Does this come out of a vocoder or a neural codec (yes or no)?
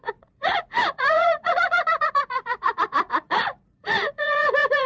yes